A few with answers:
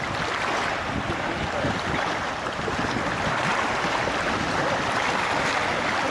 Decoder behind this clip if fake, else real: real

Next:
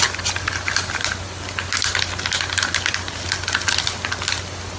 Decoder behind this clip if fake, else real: real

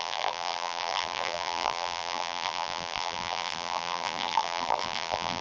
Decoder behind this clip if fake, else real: fake, vocoder, BigVGAN v2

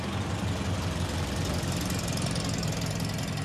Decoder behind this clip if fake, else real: real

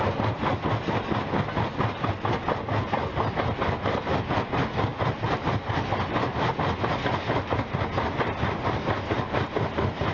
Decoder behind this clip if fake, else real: real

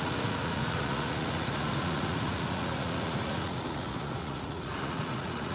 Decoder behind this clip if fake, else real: fake, vocoder, Vocos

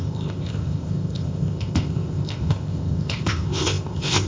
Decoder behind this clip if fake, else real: fake, codec, ZipCodec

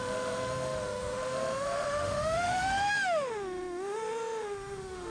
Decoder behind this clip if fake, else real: fake, autoencoder, DAC-VAE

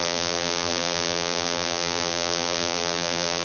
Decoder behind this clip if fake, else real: fake, vocoder, BigVGAN v2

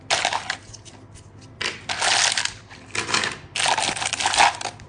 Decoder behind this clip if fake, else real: real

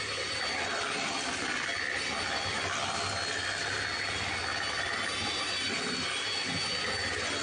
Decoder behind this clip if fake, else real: real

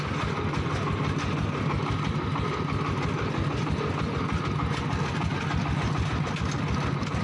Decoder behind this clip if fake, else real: real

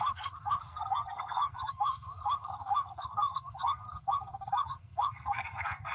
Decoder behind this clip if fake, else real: fake, codec, SNAC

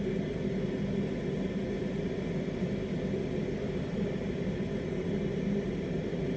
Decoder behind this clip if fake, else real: real